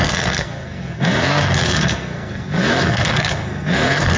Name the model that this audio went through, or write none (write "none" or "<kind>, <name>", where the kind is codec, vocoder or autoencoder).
codec, SNAC